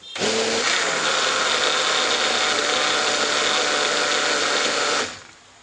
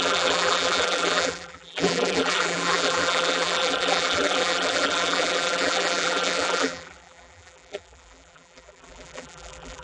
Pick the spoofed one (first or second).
second